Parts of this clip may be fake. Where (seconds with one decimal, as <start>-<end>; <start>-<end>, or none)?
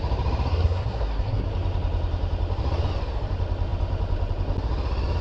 0.5-1.5